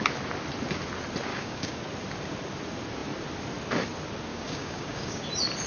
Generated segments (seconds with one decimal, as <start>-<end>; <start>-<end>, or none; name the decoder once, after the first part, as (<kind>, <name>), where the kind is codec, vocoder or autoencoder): 1.3-1.8 (codec, DAC); 4.3-5.2